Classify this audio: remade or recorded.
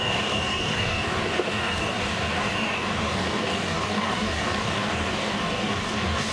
remade